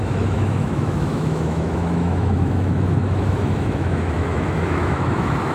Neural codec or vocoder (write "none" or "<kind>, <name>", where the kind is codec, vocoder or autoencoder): autoencoder, DAC-VAE